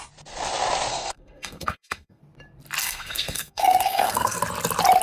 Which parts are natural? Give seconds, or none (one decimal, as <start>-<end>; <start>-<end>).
0.0-0.9; 2.2-2.8; 4.4-5.0